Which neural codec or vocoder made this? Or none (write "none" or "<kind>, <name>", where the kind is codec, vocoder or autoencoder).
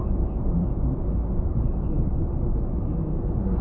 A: none